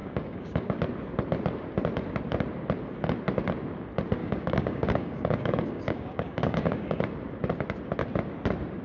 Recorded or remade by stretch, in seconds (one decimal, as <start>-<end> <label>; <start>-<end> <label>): 0.0-0.8 remade; 0.8-4.2 recorded; 4.2-7.0 remade; 7.0-8.8 recorded